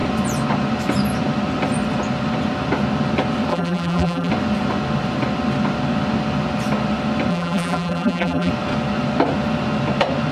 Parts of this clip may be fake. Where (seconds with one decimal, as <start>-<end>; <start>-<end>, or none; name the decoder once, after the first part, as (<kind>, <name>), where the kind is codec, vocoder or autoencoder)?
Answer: 3.5-4.3 (vocoder, BigVGAN v2); 7.3-8.5